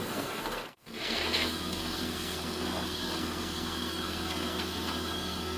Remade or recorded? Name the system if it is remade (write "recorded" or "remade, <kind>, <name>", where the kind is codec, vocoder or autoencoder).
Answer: remade, codec, SNAC